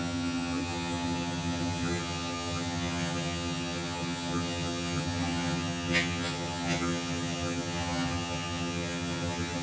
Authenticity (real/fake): fake